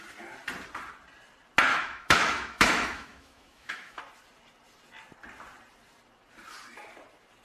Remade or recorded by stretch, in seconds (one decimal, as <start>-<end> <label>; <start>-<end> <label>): 0.0-1.7 recorded; 1.7-4.0 remade; 4.0-7.4 recorded